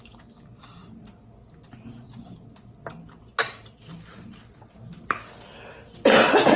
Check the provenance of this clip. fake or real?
real